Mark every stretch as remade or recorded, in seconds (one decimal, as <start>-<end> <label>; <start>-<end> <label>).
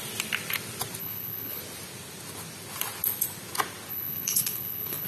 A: 0.0-1.0 recorded; 1.0-1.6 remade; 1.6-3.9 recorded; 3.9-5.1 remade